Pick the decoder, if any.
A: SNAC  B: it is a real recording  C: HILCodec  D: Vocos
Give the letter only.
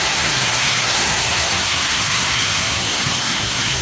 A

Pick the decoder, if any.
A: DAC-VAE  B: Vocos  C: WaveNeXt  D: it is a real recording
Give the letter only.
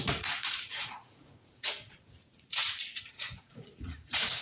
B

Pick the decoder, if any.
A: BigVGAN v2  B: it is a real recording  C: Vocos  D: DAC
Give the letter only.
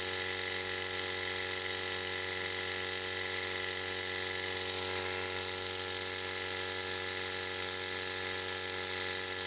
B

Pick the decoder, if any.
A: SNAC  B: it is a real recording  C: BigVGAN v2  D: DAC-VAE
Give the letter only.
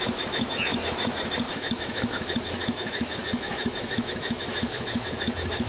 D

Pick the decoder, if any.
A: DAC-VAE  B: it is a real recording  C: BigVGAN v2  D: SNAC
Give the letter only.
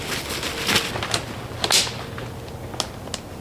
B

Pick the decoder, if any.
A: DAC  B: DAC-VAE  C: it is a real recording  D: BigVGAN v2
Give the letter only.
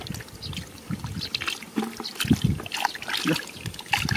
C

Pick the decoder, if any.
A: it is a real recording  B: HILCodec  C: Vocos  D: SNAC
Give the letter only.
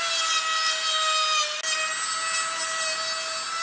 A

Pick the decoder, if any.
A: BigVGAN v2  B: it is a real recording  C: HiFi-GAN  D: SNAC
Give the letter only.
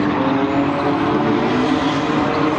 B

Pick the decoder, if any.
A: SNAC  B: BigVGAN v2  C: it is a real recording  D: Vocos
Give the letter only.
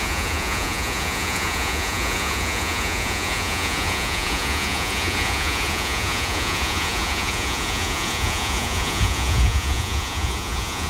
D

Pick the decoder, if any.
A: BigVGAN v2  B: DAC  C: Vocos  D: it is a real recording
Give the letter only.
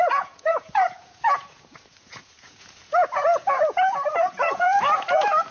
C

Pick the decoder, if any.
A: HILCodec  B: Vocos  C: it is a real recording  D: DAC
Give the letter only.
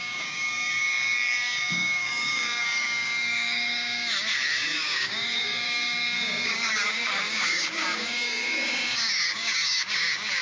D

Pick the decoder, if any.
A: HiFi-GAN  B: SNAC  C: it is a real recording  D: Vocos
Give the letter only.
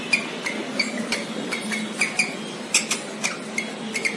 C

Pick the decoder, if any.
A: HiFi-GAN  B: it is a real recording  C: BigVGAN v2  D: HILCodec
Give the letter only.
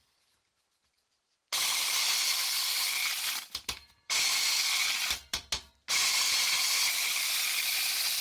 C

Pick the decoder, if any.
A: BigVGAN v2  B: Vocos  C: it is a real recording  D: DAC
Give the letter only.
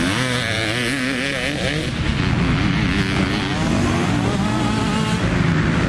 C